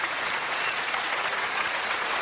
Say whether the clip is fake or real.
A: fake